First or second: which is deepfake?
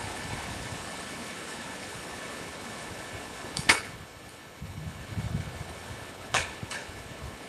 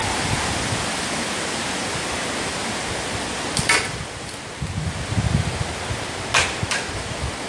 first